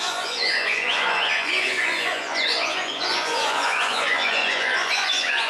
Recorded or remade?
remade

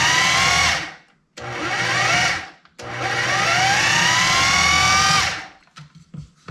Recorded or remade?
recorded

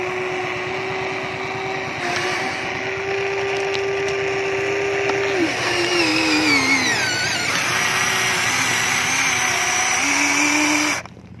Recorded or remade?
recorded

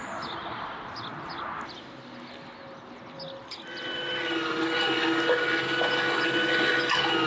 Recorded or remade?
recorded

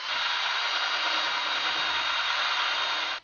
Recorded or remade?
recorded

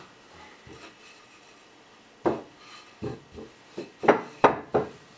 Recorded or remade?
recorded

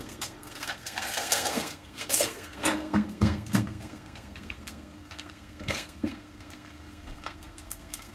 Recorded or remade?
remade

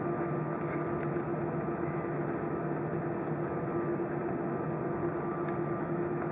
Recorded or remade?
recorded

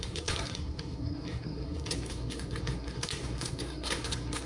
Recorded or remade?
remade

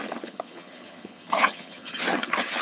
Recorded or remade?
remade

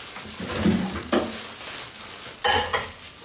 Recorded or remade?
recorded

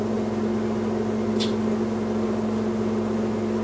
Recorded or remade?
recorded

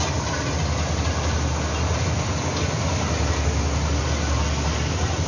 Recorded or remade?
recorded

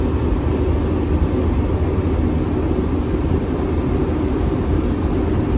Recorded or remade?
recorded